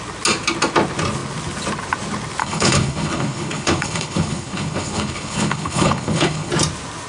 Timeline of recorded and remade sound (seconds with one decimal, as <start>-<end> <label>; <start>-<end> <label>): 0.0-2.4 recorded; 2.4-6.5 remade; 6.5-7.1 recorded